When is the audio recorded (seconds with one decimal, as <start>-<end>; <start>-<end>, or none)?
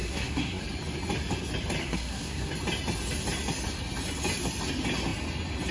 0.6-1.8; 2.5-5.7